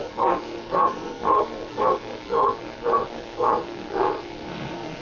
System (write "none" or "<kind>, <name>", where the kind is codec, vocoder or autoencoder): codec, SNAC